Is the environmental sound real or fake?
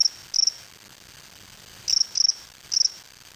real